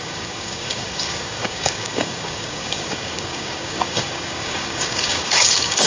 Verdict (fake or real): fake